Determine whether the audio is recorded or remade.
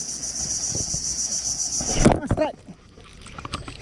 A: recorded